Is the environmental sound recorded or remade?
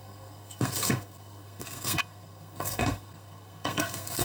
remade